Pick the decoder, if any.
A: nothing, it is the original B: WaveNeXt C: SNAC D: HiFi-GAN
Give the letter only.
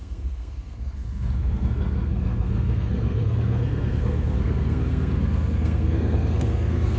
C